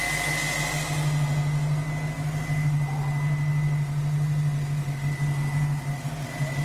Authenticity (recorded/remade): recorded